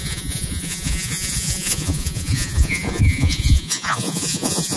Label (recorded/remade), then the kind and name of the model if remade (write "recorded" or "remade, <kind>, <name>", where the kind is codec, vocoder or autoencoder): remade, vocoder, Vocos